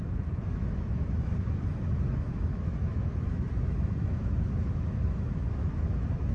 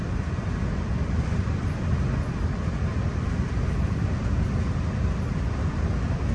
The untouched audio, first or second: second